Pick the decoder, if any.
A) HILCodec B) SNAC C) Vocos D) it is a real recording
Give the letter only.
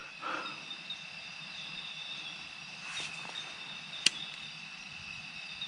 D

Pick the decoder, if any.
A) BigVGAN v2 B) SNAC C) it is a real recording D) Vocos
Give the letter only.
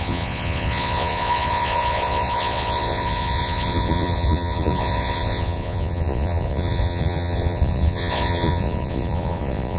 D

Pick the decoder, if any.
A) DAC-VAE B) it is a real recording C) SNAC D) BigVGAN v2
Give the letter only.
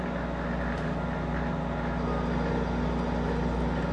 B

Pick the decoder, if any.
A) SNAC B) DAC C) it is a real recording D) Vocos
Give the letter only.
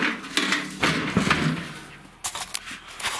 C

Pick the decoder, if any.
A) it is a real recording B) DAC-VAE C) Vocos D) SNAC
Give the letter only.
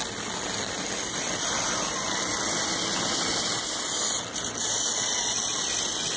A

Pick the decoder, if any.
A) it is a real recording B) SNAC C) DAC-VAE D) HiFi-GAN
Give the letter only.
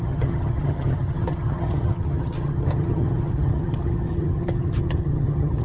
D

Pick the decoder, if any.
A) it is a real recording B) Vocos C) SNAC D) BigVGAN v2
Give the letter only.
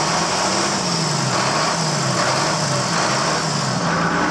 A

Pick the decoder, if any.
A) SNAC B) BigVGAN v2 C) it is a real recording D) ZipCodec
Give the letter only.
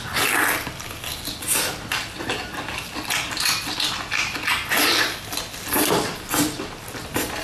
C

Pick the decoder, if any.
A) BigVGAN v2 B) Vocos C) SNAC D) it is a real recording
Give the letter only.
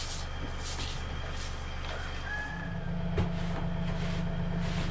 D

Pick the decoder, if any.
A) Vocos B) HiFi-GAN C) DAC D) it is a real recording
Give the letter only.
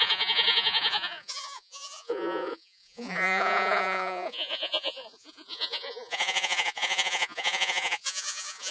A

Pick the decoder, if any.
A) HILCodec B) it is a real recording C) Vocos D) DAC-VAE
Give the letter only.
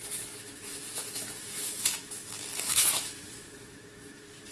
D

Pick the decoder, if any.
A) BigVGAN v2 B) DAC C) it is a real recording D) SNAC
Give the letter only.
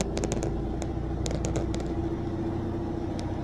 C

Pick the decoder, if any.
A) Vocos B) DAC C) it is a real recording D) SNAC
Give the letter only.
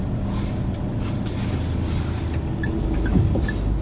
C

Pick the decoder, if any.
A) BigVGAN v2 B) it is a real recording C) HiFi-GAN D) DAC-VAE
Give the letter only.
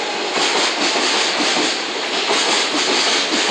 B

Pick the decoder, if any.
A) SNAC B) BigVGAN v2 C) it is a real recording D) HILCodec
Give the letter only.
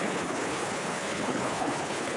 D